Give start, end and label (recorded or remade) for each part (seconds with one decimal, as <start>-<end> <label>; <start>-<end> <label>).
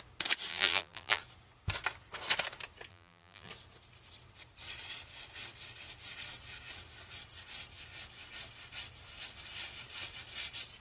0.0-0.5 recorded; 0.5-1.2 remade; 1.2-2.9 recorded; 2.9-3.5 remade; 3.5-10.8 recorded